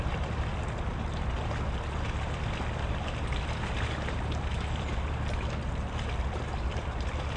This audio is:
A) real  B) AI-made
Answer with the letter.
A